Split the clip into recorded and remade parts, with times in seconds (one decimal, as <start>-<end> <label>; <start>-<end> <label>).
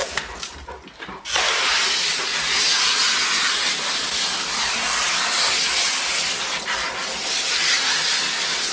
0.0-8.7 recorded